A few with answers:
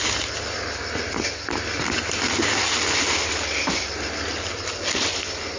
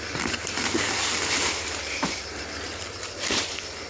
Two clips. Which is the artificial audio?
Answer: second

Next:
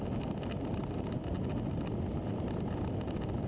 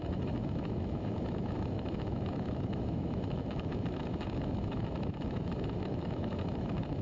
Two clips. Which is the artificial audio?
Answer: second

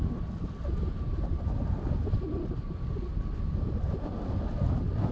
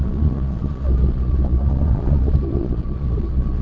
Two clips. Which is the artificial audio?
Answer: second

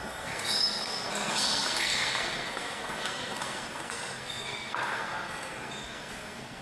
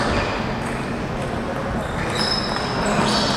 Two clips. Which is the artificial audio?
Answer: first